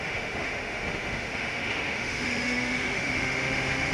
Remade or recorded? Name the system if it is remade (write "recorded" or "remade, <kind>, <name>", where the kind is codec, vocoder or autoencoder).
remade, autoencoder, DAC-VAE